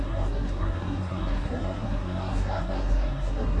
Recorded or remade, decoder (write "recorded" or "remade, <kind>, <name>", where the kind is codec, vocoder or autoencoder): remade, codec, SNAC